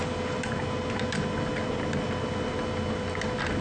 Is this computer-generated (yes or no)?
no